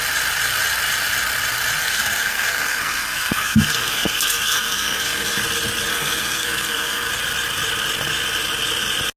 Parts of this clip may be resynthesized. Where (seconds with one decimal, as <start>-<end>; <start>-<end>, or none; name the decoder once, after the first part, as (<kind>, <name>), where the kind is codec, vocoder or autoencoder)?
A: 1.8-5.4 (codec, SNAC); 5.9-7.1